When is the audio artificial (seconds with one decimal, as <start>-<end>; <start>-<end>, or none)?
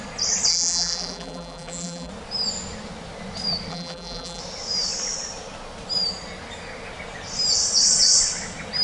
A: 0.5-2.1; 3.7-4.4